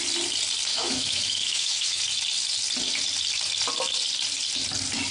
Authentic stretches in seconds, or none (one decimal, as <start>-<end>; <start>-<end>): 0.0-0.7; 2.0-5.1